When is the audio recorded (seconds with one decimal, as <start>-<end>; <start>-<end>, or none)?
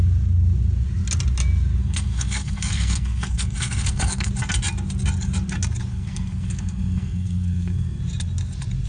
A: 0.0-1.8; 4.3-5.9; 8.0-8.9